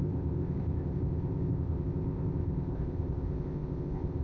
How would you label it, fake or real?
fake